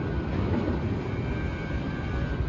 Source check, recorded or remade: remade